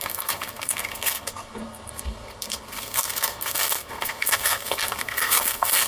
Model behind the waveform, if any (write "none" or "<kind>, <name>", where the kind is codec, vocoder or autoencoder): codec, SNAC